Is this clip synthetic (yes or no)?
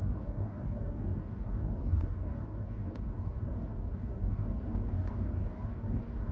yes